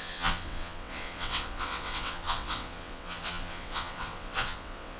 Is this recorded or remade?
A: remade